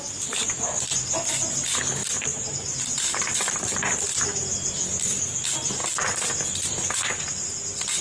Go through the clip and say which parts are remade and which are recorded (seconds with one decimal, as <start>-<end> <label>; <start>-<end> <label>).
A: 0.0-2.0 recorded; 2.0-3.8 remade; 3.8-8.0 recorded

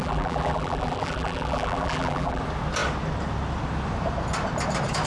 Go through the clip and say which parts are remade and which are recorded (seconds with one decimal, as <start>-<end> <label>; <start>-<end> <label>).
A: 0.0-2.4 remade; 2.4-5.1 recorded

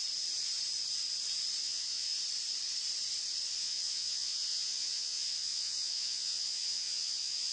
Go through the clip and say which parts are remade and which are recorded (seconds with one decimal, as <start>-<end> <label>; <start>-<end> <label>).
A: 0.0-1.6 recorded; 1.6-2.1 remade; 2.1-3.6 recorded; 3.6-7.5 remade

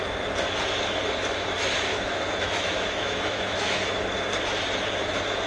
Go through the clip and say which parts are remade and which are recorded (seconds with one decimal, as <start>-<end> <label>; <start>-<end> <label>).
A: 0.0-1.9 recorded; 1.9-4.0 remade; 4.0-5.5 recorded

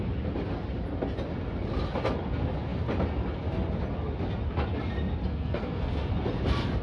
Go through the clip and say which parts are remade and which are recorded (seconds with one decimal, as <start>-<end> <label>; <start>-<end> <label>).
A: 0.0-5.3 recorded; 5.3-6.1 remade; 6.1-6.8 recorded

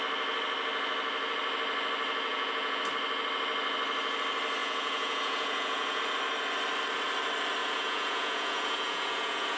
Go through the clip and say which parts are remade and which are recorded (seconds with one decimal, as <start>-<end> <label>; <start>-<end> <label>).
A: 0.0-2.3 recorded; 2.3-2.8 remade; 2.8-4.6 recorded; 4.6-6.0 remade; 6.0-7.6 recorded; 7.6-9.6 remade

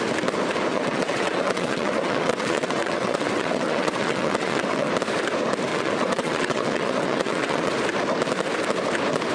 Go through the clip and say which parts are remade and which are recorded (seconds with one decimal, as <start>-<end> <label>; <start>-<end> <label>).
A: 0.0-0.7 recorded; 0.7-4.9 remade; 4.9-5.7 recorded; 5.7-7.7 remade; 7.7-9.3 recorded

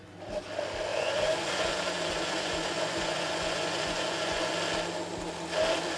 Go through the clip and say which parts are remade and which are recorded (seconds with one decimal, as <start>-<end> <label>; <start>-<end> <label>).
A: 0.0-0.9 recorded; 0.9-4.5 remade; 4.5-6.0 recorded